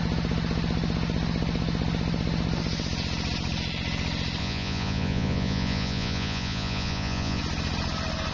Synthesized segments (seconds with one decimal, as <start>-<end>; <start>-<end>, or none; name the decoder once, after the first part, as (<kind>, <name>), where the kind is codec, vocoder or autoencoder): 4.4-7.4 (vocoder, Vocos)